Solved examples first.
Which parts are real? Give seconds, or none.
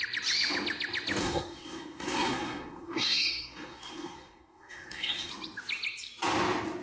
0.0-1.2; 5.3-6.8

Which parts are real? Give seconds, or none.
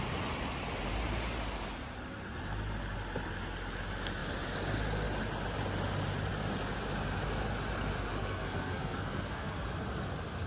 0.0-8.1; 9.6-10.5